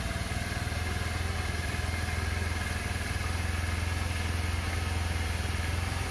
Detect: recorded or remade recorded